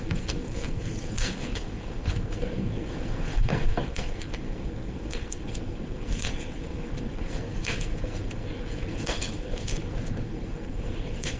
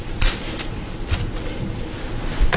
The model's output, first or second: first